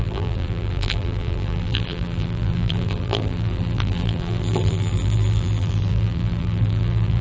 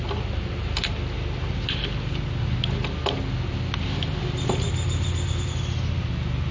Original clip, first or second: second